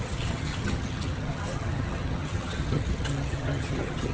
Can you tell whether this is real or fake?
fake